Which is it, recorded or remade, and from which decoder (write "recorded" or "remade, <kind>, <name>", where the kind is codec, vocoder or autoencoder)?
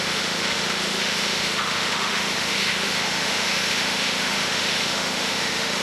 remade, autoencoder, DAC-VAE